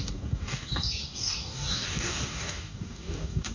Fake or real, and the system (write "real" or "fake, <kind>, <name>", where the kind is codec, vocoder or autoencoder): fake, codec, DAC